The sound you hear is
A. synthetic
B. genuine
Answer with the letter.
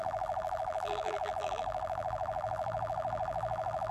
A